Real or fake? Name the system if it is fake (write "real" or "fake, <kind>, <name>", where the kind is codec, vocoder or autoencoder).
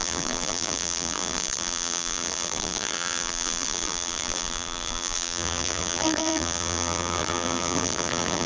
fake, vocoder, BigVGAN v2